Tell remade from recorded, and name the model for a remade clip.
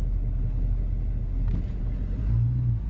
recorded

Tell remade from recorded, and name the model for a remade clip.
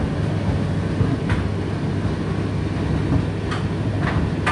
recorded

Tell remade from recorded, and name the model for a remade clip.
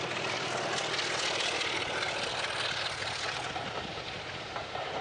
recorded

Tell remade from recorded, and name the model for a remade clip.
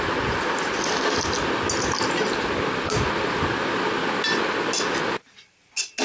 recorded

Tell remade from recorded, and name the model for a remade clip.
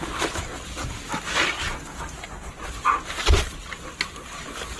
recorded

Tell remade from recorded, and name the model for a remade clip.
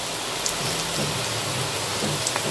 recorded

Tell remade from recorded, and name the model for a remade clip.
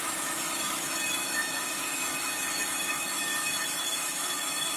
remade, autoencoder, DAC-VAE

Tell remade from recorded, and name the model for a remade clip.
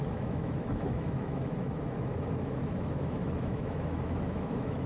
remade, autoencoder, DAC-VAE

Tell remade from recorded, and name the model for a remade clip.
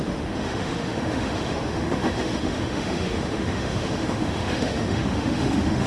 remade, autoencoder, DAC-VAE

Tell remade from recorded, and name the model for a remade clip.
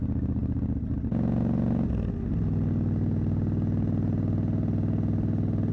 recorded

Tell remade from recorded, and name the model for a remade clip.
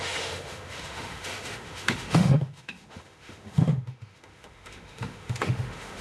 remade, autoencoder, DAC-VAE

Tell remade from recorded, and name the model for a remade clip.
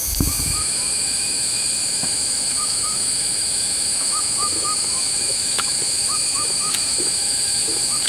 remade, autoencoder, DAC-VAE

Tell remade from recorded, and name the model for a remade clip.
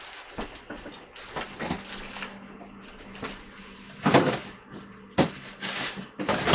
recorded